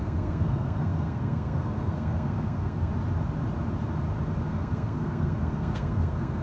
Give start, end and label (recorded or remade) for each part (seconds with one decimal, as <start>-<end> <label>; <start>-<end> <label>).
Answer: 0.0-2.9 remade; 2.9-4.5 recorded; 4.5-6.4 remade